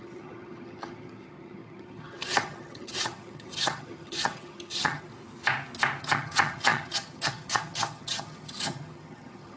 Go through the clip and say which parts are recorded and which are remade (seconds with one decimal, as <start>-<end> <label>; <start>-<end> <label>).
0.0-5.1 remade; 5.1-6.0 recorded; 6.0-9.6 remade